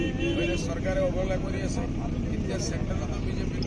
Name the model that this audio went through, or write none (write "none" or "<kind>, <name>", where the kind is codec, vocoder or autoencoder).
none